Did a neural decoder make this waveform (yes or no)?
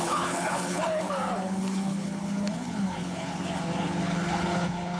yes